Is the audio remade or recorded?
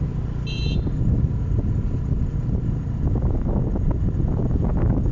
recorded